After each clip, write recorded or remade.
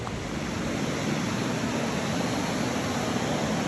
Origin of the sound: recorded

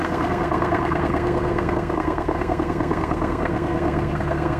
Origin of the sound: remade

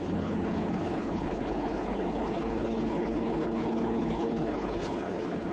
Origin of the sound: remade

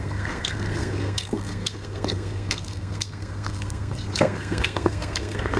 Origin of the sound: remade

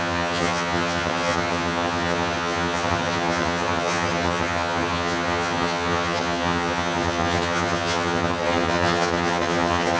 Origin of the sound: remade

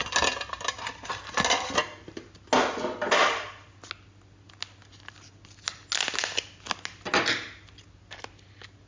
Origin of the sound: recorded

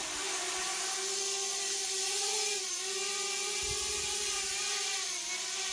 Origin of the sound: recorded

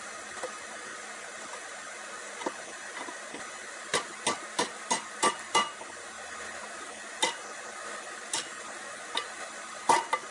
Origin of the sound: recorded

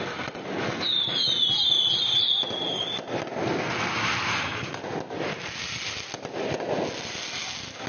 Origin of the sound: recorded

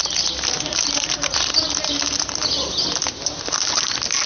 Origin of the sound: recorded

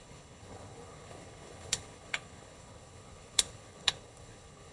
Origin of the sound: remade